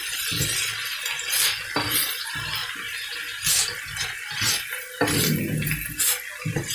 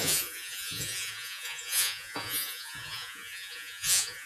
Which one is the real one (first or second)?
first